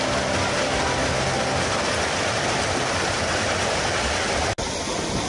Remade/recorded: recorded